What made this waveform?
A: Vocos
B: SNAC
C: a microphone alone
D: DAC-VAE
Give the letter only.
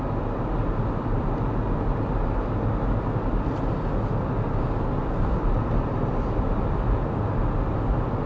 C